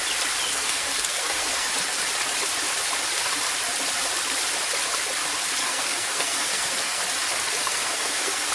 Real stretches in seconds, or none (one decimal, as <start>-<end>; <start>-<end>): 0.0-0.5; 1.7-5.6; 7.0-7.6